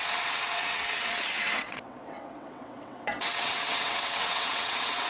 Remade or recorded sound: remade